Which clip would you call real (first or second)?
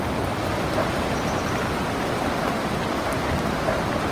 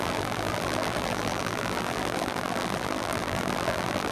first